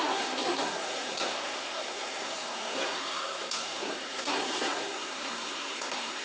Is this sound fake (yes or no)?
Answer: yes